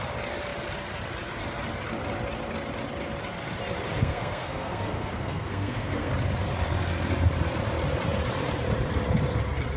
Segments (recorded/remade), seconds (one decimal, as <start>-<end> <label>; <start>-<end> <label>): 0.0-4.0 recorded; 4.0-6.1 remade; 6.1-9.8 recorded